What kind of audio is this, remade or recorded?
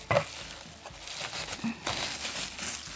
recorded